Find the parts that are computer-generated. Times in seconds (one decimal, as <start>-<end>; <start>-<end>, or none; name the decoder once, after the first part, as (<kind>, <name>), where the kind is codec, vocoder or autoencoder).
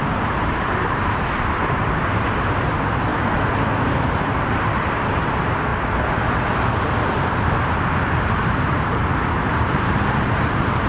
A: 0.0-3.1 (vocoder, BigVGAN v2); 3.8-5.7; 8.4-10.9